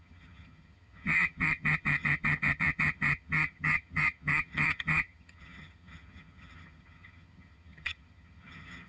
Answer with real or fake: fake